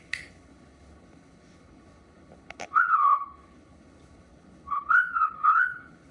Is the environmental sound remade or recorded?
remade